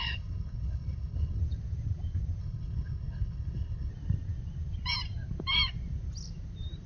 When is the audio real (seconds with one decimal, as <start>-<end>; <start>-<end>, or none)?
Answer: 1.4-2.4; 3.9-6.9